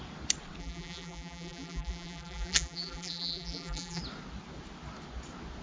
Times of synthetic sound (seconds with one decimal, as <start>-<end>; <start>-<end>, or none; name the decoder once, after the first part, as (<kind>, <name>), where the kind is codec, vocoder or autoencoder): 0.6-4.0 (vocoder, BigVGAN v2)